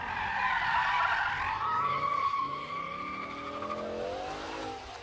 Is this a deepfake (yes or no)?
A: no